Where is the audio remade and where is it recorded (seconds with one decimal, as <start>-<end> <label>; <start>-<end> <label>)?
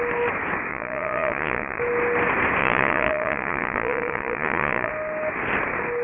0.0-0.7 recorded; 0.7-1.8 remade; 1.8-2.6 recorded; 2.6-4.9 remade; 4.9-6.0 recorded